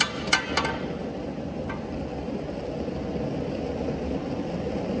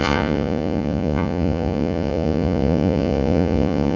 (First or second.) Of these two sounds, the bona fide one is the first